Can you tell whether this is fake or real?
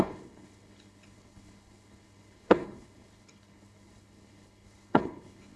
fake